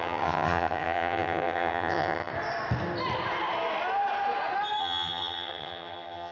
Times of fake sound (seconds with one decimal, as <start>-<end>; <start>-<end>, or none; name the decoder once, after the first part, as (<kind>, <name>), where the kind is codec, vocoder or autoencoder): 0.0-2.3 (vocoder, HiFi-GAN); 4.8-6.3